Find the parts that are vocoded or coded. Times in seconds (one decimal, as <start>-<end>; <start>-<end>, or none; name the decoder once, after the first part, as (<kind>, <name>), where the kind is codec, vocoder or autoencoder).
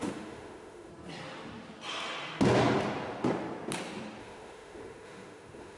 0.0-0.9 (autoencoder, DAC-VAE); 4.2-5.8